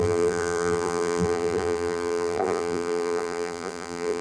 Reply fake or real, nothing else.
fake